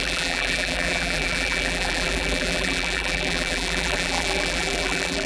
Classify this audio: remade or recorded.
remade